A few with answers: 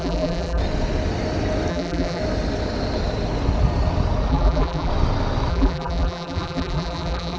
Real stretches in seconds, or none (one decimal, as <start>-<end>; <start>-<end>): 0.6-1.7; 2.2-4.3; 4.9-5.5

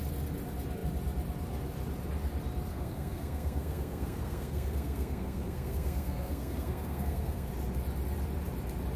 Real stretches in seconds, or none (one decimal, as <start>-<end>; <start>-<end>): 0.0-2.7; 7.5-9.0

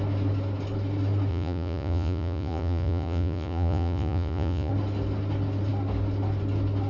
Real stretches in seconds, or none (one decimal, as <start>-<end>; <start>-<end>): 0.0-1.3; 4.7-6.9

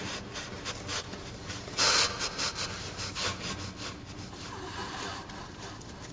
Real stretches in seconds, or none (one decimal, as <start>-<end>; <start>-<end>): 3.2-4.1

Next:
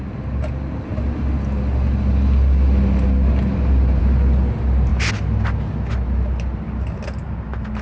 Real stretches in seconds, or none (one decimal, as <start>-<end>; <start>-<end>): 0.0-7.8

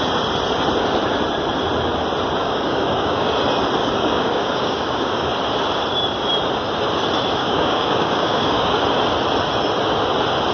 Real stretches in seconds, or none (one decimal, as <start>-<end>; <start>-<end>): 0.0-2.4; 3.3-3.8; 5.3-7.4; 8.8-10.5